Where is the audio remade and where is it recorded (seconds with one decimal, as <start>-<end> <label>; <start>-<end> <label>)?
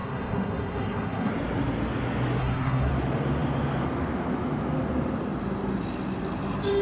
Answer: 0.0-1.3 remade; 1.3-2.4 recorded; 2.4-2.9 remade; 2.9-6.8 recorded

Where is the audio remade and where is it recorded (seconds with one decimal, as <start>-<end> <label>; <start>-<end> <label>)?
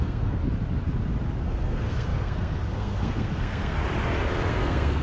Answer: 0.0-0.4 remade; 0.4-1.4 recorded; 1.4-3.8 remade; 3.8-4.5 recorded; 4.5-5.0 remade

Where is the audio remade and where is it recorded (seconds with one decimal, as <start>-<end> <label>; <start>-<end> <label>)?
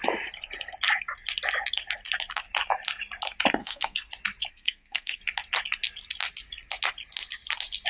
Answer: 0.0-3.6 recorded; 3.6-4.1 remade; 4.1-4.5 recorded; 4.5-5.2 remade; 5.2-7.9 recorded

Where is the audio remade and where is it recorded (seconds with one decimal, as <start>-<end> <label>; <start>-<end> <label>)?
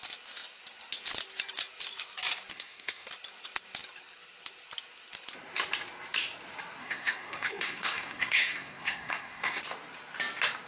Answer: 0.0-2.5 recorded; 2.5-3.1 remade; 3.1-6.8 recorded; 6.8-9.6 remade; 9.6-10.7 recorded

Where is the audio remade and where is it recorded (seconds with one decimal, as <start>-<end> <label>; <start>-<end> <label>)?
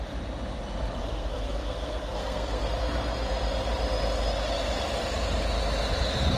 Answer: 0.0-1.0 recorded; 1.0-2.7 remade; 2.7-6.4 recorded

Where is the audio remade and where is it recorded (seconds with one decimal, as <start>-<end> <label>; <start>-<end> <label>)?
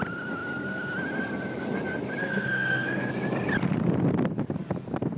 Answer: 0.0-2.2 recorded; 2.2-3.1 remade; 3.1-5.2 recorded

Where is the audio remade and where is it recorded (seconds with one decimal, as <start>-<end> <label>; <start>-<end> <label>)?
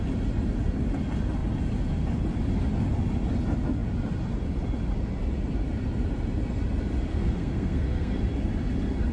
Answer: 0.0-7.1 recorded; 7.1-8.2 remade; 8.2-9.1 recorded